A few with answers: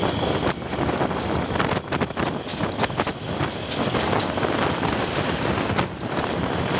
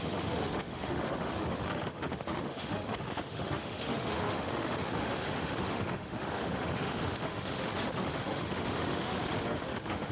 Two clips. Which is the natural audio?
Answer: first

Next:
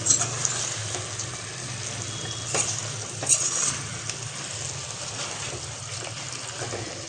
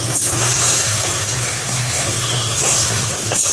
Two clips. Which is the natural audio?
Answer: first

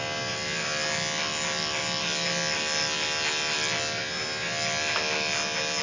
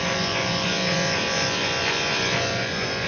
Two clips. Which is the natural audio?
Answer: first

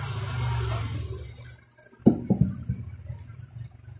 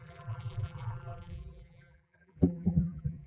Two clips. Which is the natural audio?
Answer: first